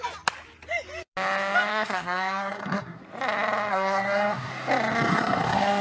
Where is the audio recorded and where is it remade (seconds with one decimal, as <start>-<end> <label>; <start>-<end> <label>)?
0.0-1.7 recorded; 1.7-3.0 remade; 3.0-3.7 recorded; 3.7-4.5 remade; 4.5-5.1 recorded; 5.1-5.8 remade